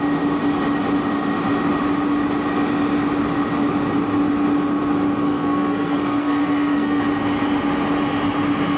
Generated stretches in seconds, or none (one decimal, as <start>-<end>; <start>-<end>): 5.2-7.0